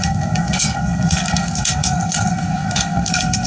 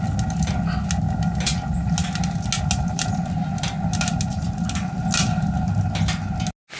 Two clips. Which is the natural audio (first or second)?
second